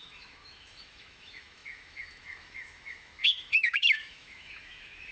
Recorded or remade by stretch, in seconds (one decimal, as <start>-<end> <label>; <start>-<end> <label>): 0.0-5.1 remade